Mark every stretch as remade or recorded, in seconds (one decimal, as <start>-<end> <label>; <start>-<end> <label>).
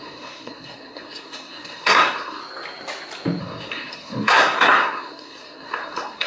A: 0.0-2.4 remade; 2.4-3.4 recorded; 3.4-6.3 remade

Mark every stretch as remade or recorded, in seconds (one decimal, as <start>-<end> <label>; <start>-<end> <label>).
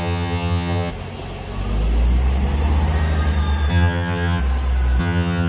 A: 0.0-0.9 remade; 0.9-3.7 recorded; 3.7-4.4 remade; 4.4-5.0 recorded; 5.0-5.5 remade